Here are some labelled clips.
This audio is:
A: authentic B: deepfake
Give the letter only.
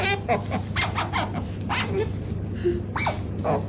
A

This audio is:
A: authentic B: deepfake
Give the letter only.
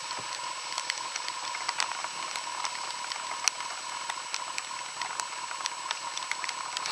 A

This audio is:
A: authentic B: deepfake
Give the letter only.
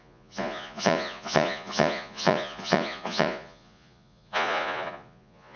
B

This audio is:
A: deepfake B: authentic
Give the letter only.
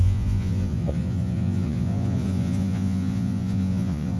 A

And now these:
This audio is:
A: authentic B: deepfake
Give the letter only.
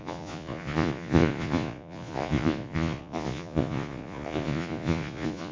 B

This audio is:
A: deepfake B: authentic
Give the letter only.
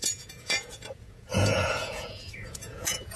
A